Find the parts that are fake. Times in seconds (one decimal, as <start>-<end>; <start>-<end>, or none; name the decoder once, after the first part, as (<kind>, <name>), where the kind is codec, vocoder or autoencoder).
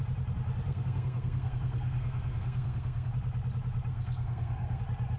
0.7-3.1 (codec, SNAC); 3.9-4.8